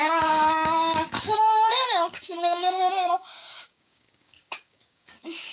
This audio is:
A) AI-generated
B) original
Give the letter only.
A